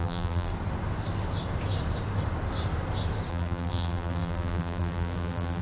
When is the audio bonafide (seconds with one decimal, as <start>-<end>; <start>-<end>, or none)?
0.5-3.3